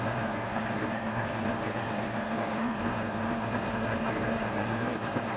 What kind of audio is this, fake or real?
fake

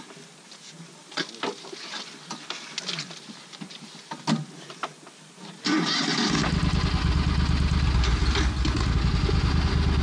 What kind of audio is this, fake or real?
real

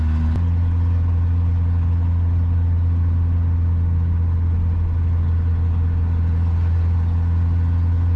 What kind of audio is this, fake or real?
real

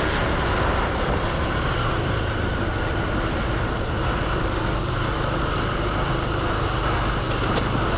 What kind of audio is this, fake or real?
real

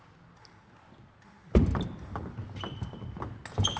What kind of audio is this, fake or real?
real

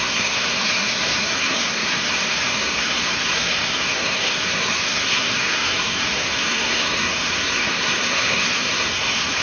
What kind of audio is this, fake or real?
fake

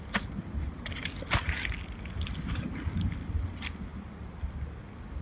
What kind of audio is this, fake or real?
real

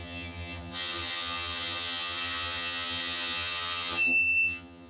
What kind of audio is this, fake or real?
fake